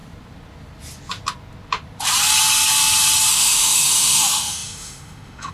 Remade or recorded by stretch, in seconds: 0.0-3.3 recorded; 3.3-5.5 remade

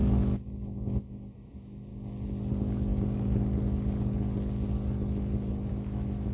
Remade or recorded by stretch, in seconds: 0.0-1.9 remade; 1.9-5.7 recorded; 5.7-6.3 remade

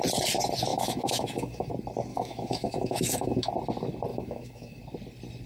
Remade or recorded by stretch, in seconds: 0.0-0.7 recorded; 0.7-1.7 remade; 1.7-2.1 recorded; 2.1-3.5 remade; 3.5-4.1 recorded; 4.1-4.8 remade; 4.8-5.5 recorded